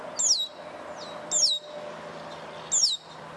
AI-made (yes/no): no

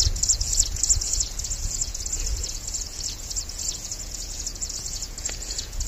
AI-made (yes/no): yes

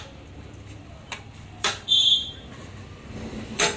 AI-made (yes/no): yes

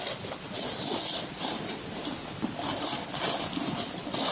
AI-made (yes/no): no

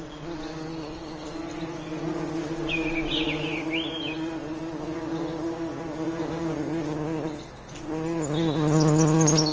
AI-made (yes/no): no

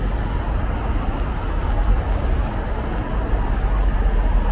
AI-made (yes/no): no